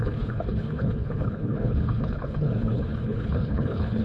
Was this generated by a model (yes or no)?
yes